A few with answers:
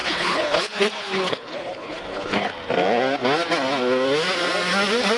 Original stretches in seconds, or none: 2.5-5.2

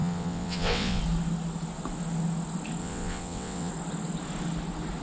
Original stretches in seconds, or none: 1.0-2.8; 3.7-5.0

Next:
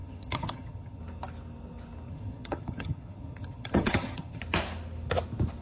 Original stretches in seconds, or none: 1.0-2.1; 4.4-5.6